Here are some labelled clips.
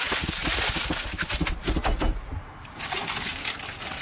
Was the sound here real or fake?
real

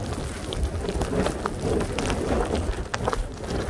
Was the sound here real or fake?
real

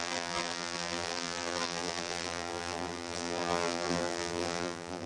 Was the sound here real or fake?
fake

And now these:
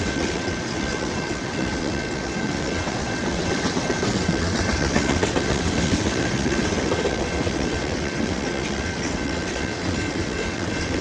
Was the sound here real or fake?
fake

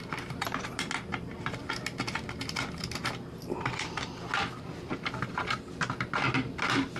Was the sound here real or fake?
real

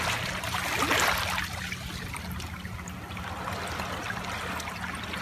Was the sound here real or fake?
real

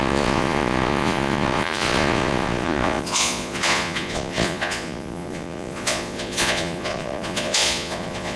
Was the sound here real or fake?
fake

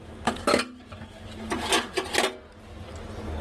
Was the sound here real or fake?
real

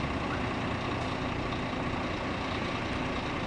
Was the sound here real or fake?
real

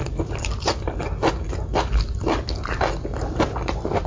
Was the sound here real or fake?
real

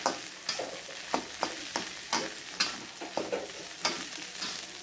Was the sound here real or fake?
real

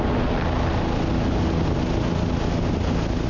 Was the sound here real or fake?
real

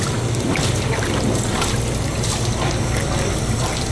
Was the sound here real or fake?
real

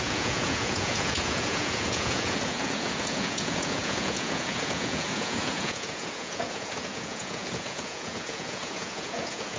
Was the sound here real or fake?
fake